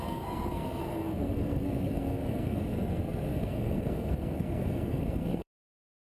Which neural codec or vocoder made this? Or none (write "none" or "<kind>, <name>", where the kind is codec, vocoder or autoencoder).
codec, SNAC